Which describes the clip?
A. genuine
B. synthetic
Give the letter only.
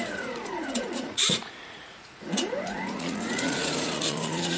B